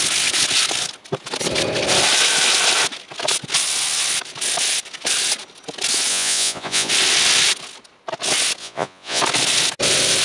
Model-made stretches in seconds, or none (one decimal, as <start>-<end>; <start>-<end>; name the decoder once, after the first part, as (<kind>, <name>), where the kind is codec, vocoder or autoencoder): 6.1-6.9 (vocoder, Vocos); 8.6-9.2